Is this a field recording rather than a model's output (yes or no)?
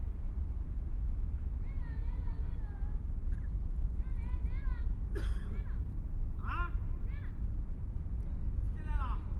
yes